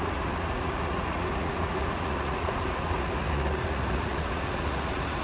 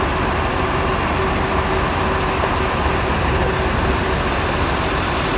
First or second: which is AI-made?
first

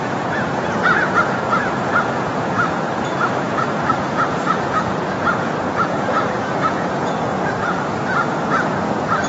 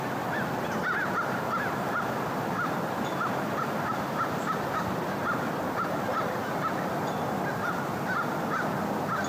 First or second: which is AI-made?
first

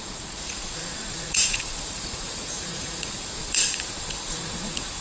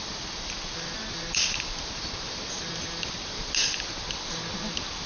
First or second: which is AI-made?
first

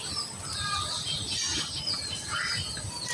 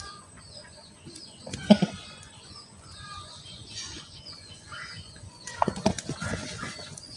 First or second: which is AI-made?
second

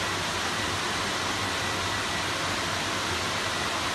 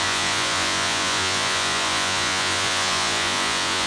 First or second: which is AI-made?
second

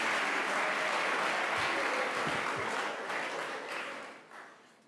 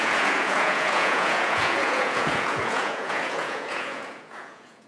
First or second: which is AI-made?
second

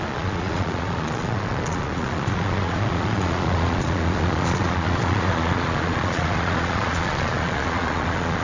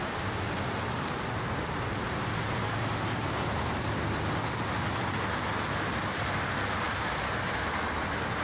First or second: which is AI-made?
first